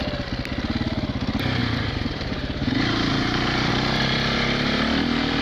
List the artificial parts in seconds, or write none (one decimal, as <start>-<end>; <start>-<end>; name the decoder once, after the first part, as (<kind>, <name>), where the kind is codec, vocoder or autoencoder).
1.6-3.7 (vocoder, BigVGAN v2)